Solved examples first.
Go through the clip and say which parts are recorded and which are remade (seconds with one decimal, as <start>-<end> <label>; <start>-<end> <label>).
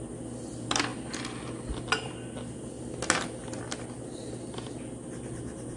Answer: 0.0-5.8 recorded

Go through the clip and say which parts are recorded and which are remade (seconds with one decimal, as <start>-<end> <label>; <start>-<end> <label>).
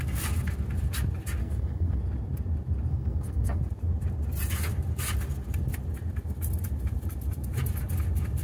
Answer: 0.0-1.4 recorded; 1.4-2.0 remade; 2.0-2.9 recorded; 2.9-3.6 remade; 3.6-8.4 recorded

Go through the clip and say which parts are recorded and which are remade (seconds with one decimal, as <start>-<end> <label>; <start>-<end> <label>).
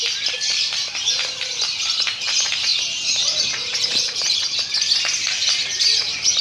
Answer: 0.0-6.4 recorded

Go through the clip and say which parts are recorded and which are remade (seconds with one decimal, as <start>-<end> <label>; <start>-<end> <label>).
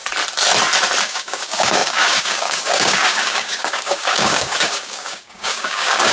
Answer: 0.0-1.0 recorded; 1.0-6.1 remade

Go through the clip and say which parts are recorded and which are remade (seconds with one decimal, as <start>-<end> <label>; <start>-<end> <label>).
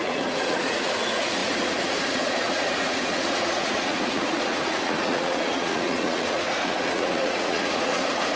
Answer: 0.0-8.4 remade